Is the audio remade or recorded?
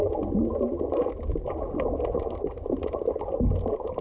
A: recorded